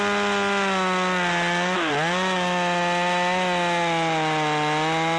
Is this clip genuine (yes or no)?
yes